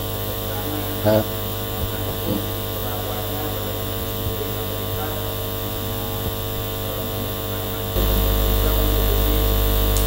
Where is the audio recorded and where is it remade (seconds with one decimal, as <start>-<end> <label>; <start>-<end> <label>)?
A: 0.0-10.1 recorded